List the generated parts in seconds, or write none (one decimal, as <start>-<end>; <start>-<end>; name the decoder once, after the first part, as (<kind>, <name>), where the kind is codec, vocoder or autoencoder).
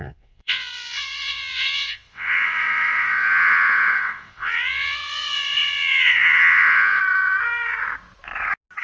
0.0-7.0 (vocoder, WaveNeXt)